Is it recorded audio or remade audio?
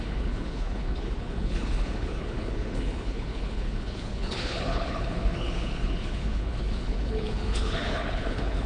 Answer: remade